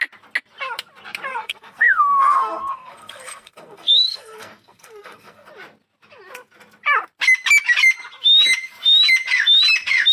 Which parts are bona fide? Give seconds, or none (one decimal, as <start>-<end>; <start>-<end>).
0.0-1.3; 5.5-10.1